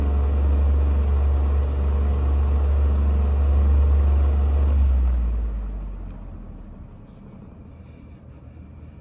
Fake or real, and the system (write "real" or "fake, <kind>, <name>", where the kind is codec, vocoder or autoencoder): real